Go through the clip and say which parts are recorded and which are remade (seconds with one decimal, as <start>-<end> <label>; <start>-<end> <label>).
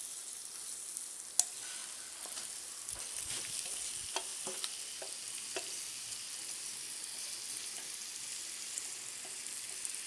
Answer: 0.0-10.1 recorded